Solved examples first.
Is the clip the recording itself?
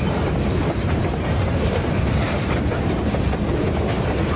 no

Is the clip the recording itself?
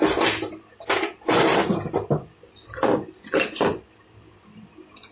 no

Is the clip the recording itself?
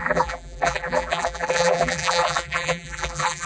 no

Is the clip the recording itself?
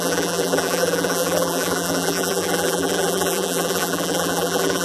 no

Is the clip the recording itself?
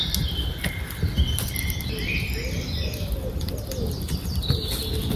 yes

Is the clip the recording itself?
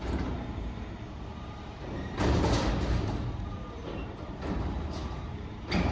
no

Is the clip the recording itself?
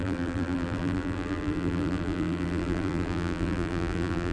no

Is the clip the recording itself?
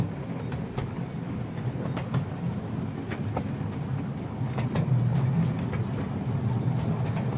yes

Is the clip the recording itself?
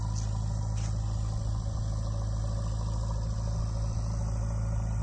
yes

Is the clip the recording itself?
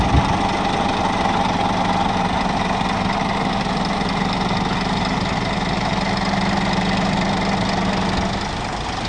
yes